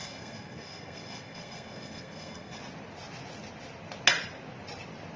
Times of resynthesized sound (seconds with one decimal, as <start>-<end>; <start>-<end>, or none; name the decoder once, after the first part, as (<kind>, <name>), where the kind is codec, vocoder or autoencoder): 0.0-2.6 (codec, SNAC)